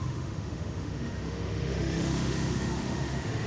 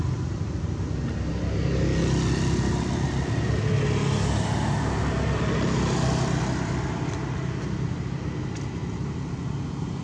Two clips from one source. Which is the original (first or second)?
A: second